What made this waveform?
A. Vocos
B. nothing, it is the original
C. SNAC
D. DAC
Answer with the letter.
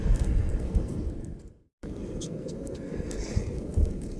C